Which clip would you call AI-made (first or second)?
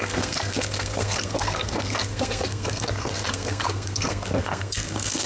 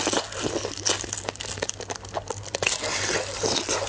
first